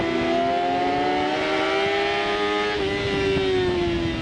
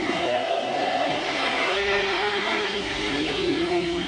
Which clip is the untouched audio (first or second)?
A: first